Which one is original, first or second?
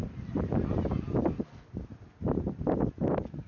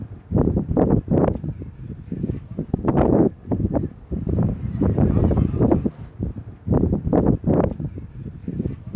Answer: first